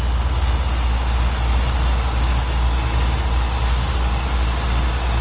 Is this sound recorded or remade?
recorded